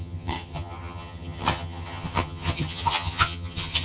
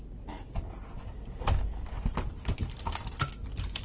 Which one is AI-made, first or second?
first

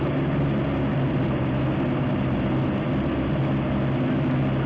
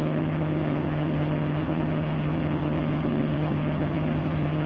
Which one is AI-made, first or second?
second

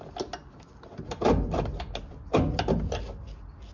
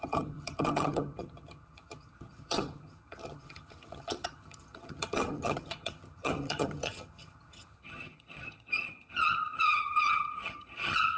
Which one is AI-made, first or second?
second